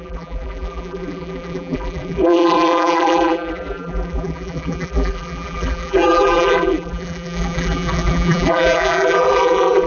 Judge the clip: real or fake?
fake